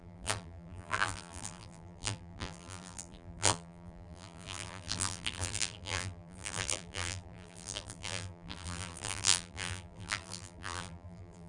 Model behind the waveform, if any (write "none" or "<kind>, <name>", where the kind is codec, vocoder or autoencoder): vocoder, BigVGAN v2